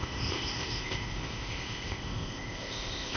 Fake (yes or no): yes